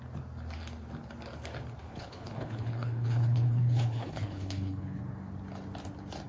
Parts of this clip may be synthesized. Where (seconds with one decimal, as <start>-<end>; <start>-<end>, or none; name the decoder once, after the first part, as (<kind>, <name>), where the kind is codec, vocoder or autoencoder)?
1.8-5.0 (codec, HILCodec)